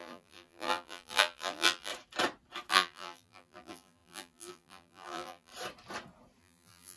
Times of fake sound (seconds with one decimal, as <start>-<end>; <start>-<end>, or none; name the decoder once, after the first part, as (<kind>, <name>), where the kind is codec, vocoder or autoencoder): 0.0-1.9 (vocoder, BigVGAN v2); 2.7-5.5; 6.4-7.0